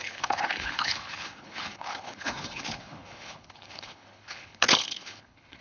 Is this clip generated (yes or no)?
yes